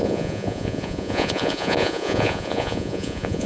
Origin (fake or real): fake